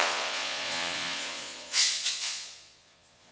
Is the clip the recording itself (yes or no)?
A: no